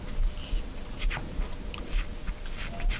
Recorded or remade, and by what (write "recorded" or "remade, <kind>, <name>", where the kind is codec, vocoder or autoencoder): recorded